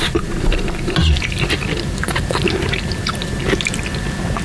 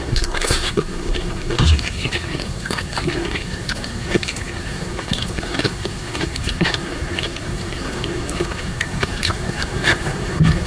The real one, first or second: first